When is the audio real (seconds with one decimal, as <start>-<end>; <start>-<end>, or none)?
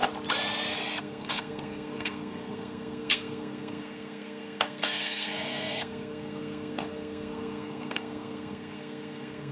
0.0-1.0